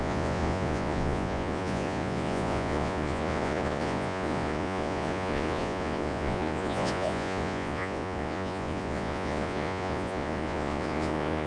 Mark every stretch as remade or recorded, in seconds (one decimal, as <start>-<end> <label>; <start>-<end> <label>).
0.0-11.5 remade